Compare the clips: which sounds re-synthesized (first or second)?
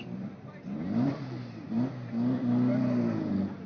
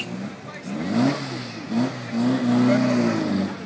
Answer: first